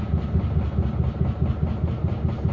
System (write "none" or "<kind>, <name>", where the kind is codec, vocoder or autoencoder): none